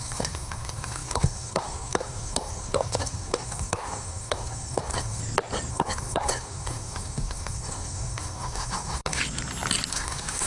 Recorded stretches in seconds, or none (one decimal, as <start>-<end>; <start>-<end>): 5.2-5.7; 9.2-9.9